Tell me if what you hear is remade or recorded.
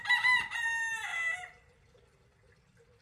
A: recorded